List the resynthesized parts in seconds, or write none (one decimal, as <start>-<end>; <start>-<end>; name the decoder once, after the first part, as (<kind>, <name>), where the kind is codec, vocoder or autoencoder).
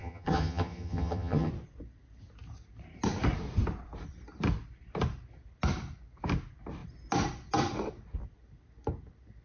0.0-1.5 (vocoder, HiFi-GAN)